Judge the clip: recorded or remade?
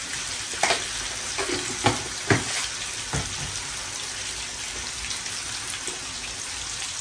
recorded